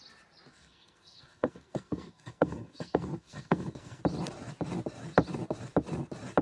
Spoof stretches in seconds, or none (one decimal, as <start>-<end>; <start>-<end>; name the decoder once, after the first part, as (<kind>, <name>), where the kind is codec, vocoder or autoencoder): 0.5-4.0 (codec, SNAC)